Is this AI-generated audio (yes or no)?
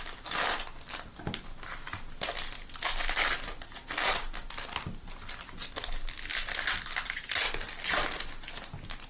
no